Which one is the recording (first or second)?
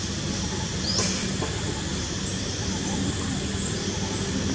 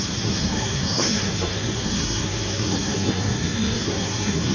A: first